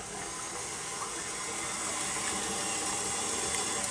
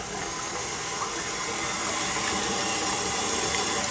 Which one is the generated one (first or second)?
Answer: second